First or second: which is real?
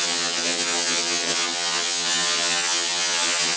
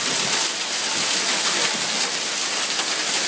second